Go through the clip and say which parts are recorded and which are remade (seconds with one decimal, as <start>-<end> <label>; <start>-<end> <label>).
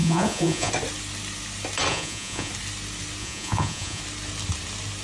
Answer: 0.0-0.7 remade; 0.7-1.9 recorded; 1.9-2.5 remade; 2.5-3.2 recorded; 3.2-4.0 remade; 4.0-5.0 recorded